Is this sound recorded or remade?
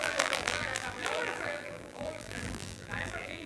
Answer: remade